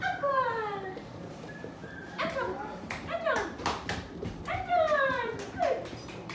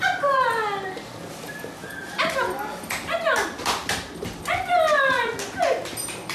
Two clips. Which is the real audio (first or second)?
second